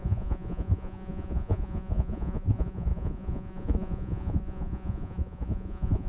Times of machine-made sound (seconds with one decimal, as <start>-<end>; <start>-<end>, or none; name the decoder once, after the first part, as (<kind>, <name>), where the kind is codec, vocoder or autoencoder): 0.0-6.1 (vocoder, Vocos)